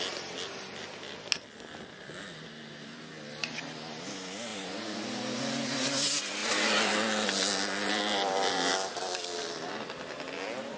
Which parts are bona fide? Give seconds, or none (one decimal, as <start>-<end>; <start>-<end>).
0.0-10.8